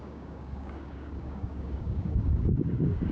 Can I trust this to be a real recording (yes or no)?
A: no